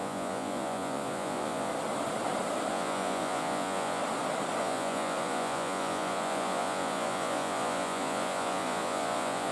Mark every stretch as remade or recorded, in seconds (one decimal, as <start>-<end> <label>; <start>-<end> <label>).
0.0-1.7 remade; 1.7-2.7 recorded; 2.7-4.0 remade; 4.0-4.6 recorded; 4.6-9.5 remade